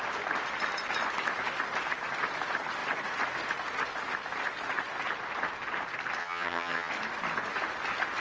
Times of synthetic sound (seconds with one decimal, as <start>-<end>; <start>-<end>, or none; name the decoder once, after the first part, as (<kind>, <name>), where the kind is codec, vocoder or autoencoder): 6.2-6.9 (vocoder, HiFi-GAN)